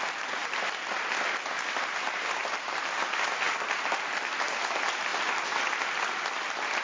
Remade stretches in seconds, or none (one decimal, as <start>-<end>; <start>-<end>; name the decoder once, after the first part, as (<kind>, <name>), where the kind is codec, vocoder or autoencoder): 0.4-1.3 (vocoder, BigVGAN v2)

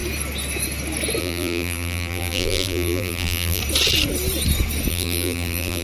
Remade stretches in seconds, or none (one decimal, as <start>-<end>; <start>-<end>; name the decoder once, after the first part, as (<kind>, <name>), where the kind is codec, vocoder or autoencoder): 1.2-3.6 (vocoder, BigVGAN v2); 4.9-5.8